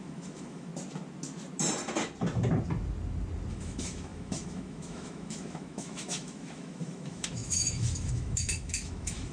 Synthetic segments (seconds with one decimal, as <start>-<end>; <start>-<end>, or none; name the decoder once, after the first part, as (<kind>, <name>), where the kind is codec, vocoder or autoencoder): 0.0-0.7 (autoencoder, DAC-VAE); 3.5-9.3